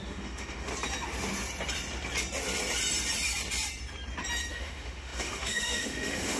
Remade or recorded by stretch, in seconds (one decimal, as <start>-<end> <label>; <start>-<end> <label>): 0.0-0.7 remade; 0.7-4.5 recorded; 4.5-6.4 remade